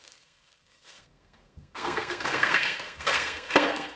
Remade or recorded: remade